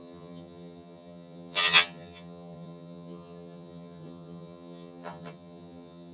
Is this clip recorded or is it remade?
remade